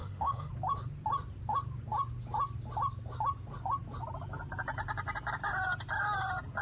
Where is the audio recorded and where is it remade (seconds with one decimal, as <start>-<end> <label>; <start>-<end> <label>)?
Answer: 0.0-0.5 remade; 0.5-6.6 recorded